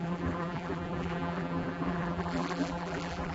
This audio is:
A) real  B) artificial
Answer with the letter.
B